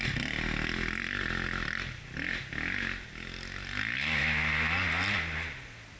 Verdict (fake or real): real